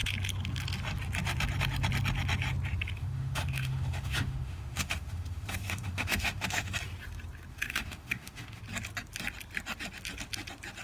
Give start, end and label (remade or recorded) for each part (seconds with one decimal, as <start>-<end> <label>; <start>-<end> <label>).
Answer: 0.0-3.0 recorded; 3.0-6.7 remade; 6.7-7.5 recorded; 7.5-8.6 remade; 8.6-10.8 recorded